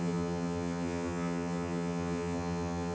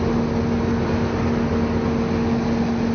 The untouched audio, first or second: second